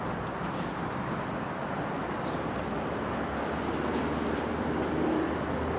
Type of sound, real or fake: fake